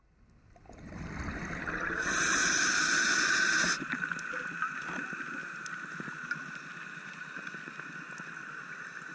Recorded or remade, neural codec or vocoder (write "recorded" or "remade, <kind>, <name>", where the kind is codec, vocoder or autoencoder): recorded